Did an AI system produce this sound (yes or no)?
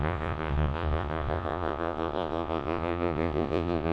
yes